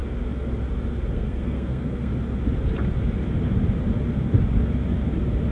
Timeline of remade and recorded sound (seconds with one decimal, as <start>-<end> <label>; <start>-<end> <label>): 0.0-1.1 recorded; 1.1-2.1 remade; 2.1-5.5 recorded